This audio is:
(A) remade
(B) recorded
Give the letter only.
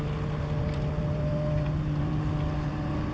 B